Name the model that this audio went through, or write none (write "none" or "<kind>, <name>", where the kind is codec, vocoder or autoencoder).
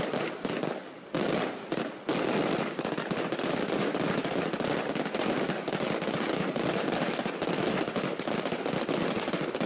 none